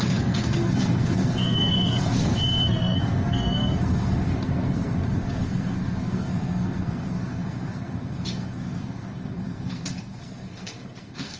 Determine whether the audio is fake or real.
fake